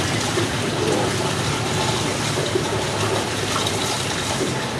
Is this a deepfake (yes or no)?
no